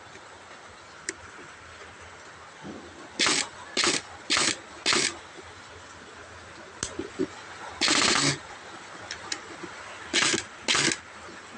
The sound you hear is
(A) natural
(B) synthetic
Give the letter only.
A